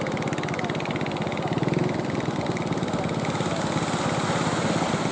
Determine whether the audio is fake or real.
real